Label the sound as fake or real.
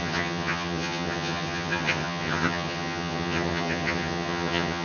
fake